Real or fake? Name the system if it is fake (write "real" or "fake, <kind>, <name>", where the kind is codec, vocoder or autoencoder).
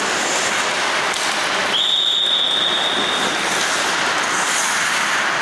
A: real